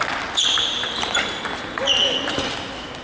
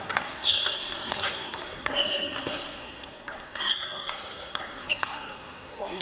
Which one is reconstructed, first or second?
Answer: second